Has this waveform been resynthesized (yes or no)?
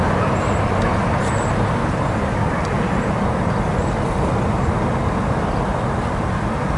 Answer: no